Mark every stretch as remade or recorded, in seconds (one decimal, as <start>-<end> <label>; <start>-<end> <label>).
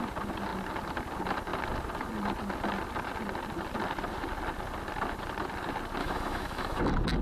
0.0-6.0 recorded; 6.0-6.8 remade; 6.8-7.2 recorded